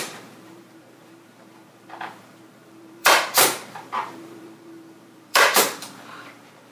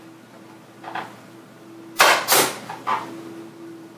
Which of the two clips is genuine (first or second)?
second